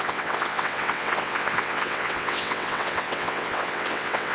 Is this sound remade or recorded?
remade